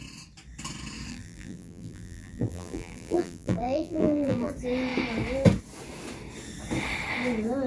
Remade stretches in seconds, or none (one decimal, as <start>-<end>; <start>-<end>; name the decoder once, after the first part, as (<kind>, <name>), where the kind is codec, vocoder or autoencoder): 1.1-4.5 (vocoder, BigVGAN v2)